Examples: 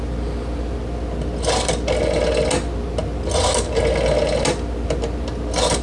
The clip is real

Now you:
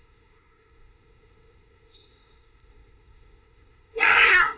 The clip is fake